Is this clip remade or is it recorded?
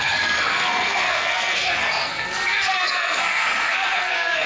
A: remade